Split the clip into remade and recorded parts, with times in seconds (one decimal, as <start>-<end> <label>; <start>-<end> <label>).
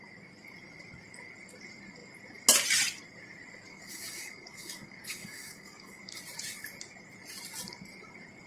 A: 0.0-3.7 recorded; 3.7-6.2 remade; 6.2-8.5 recorded